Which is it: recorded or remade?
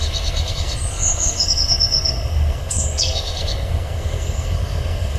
remade